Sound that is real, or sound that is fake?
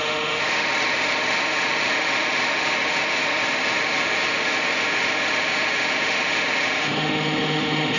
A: fake